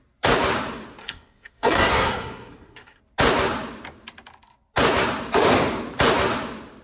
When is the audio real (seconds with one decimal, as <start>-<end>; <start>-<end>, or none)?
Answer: 0.0-1.0; 3.0-6.8